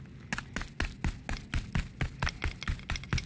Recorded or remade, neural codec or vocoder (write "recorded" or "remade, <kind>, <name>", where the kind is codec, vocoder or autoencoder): recorded